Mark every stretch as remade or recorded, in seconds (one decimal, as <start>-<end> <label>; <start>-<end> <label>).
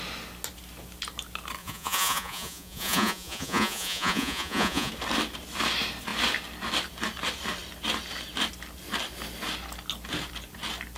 0.0-1.6 recorded; 1.6-4.9 remade; 4.9-11.0 recorded